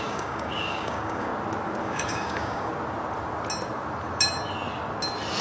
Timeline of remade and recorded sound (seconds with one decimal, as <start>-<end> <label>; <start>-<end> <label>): 0.0-1.3 remade; 1.3-1.8 recorded; 1.8-2.7 remade; 2.7-5.4 recorded